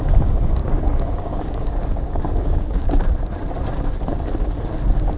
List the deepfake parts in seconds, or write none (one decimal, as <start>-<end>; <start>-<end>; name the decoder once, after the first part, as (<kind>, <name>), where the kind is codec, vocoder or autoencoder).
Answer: 0.6-3.1 (codec, DAC)